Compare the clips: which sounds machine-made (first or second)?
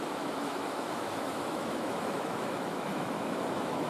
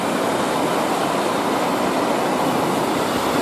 first